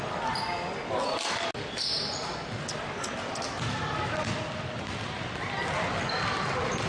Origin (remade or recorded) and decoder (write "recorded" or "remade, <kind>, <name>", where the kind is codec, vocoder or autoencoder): recorded